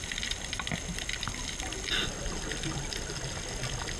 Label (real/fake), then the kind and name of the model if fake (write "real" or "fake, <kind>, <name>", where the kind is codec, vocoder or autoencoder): real